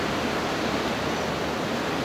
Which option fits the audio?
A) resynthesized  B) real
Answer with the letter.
B